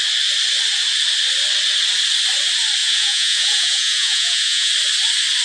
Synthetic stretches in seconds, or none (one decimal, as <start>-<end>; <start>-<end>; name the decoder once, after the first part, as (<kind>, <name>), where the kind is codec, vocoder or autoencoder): 2.8-4.7 (vocoder, Vocos)

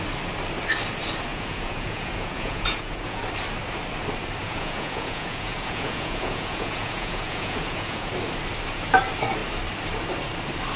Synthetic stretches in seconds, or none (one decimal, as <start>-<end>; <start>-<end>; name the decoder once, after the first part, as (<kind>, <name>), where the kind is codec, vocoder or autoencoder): 1.3-3.2 (vocoder, Vocos); 4.4-8.1

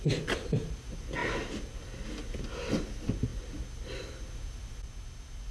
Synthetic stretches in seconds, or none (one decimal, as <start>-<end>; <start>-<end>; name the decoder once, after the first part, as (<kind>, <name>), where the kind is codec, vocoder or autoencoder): none